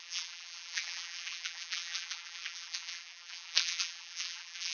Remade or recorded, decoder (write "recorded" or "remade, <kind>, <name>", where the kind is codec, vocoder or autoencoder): remade, vocoder, BigVGAN v2